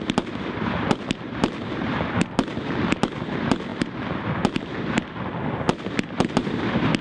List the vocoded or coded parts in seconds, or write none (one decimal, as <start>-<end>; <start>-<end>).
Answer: none